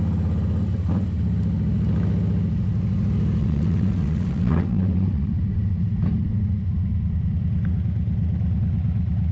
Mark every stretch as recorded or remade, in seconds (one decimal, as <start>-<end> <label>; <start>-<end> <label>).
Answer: 0.0-3.4 recorded; 3.4-5.3 remade; 5.3-9.3 recorded